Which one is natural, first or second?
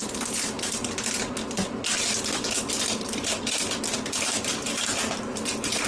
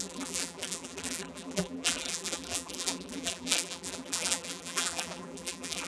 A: first